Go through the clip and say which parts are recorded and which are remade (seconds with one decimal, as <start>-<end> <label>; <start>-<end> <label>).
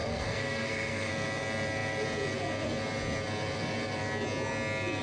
0.0-1.1 remade; 1.1-5.0 recorded